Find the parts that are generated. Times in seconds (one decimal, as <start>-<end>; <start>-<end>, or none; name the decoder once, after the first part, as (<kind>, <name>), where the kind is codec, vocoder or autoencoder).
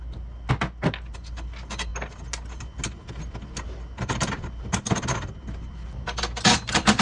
none